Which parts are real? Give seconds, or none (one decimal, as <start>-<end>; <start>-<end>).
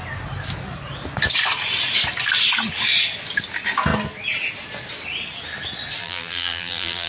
0.0-6.0